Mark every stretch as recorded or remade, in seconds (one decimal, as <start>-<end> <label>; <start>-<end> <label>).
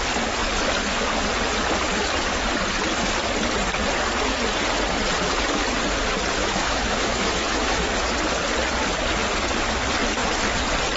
0.0-6.4 recorded; 6.4-7.9 remade; 7.9-11.0 recorded